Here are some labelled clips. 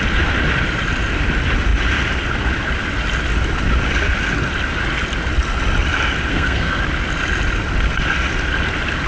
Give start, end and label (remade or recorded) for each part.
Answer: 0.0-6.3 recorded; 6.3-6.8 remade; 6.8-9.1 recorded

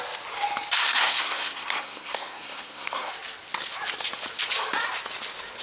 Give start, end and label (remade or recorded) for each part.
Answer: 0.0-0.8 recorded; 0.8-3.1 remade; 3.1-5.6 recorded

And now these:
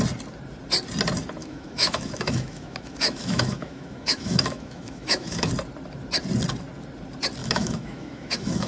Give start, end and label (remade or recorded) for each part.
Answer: 0.0-1.4 recorded; 1.4-5.5 remade; 5.5-7.4 recorded; 7.4-8.7 remade